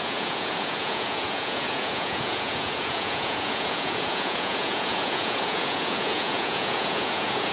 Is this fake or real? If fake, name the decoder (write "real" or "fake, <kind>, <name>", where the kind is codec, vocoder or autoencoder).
fake, vocoder, Vocos